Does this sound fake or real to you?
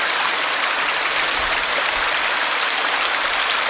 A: real